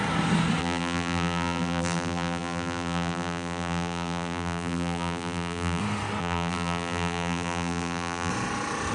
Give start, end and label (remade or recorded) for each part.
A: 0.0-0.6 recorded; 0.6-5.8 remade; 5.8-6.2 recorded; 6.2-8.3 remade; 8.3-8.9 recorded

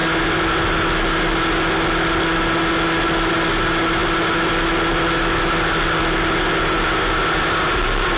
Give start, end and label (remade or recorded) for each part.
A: 0.0-8.2 recorded

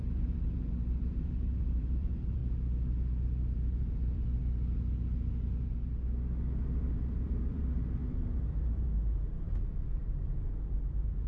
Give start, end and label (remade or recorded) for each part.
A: 0.0-2.4 remade; 2.4-3.8 recorded; 3.8-4.4 remade; 4.4-6.9 recorded; 6.9-11.3 remade

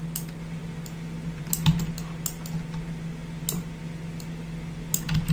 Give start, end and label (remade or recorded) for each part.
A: 0.0-5.3 recorded

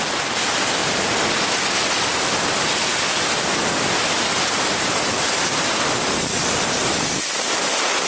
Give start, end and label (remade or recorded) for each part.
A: 0.0-6.8 recorded; 6.8-7.5 remade; 7.5-8.1 recorded

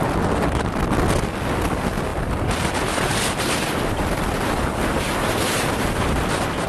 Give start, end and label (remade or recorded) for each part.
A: 0.0-6.7 recorded

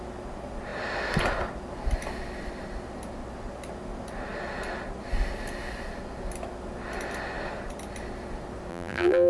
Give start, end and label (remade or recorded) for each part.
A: 0.0-8.7 recorded; 8.7-9.3 remade

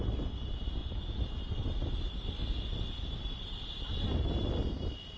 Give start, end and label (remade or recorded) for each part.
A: 0.0-0.8 recorded; 0.8-3.8 remade; 3.8-5.2 recorded